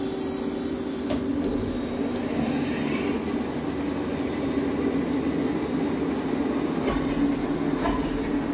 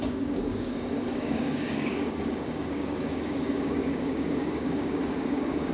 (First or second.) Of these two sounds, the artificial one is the second